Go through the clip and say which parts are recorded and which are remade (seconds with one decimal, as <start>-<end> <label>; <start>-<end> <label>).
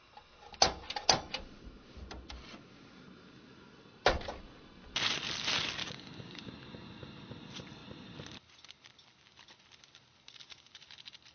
0.0-5.8 recorded; 5.8-6.5 remade; 6.5-11.3 recorded